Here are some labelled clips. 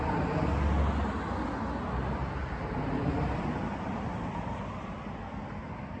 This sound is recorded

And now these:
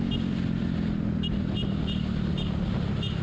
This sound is recorded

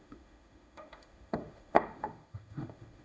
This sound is remade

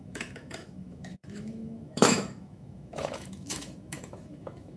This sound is remade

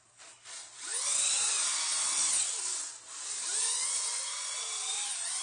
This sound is recorded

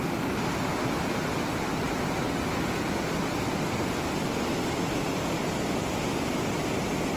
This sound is recorded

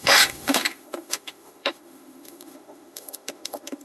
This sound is remade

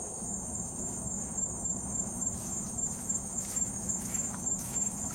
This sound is remade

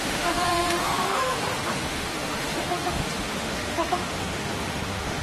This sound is remade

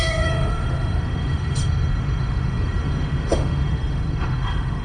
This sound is remade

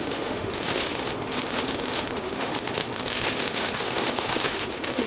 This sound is remade